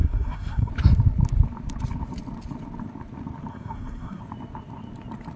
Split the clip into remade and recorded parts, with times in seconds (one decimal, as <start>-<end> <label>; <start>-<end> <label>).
0.0-0.7 remade; 0.7-3.5 recorded; 3.5-4.2 remade; 4.2-5.4 recorded